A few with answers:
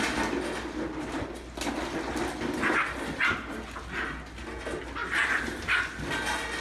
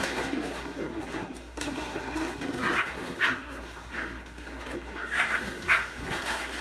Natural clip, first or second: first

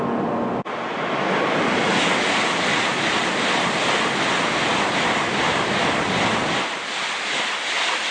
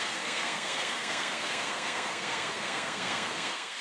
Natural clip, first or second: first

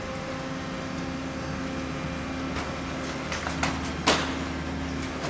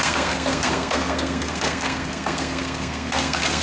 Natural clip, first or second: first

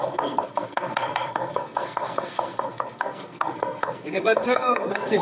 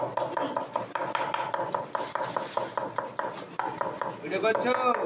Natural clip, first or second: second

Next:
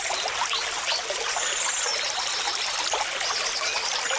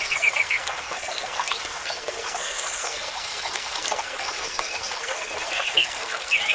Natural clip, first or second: first